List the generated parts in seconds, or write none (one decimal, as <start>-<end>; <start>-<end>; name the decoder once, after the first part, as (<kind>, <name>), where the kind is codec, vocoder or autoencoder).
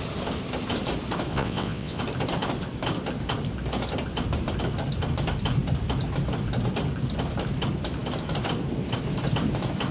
1.3-2.0 (vocoder, WaveNeXt)